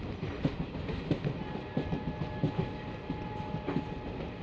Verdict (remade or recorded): recorded